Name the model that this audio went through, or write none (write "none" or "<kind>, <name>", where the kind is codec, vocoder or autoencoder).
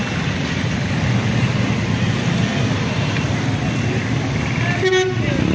none